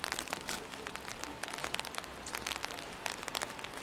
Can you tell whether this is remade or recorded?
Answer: recorded